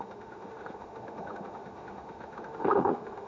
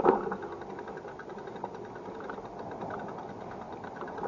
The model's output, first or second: first